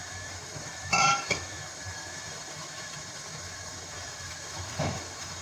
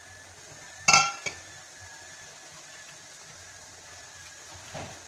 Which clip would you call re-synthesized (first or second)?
first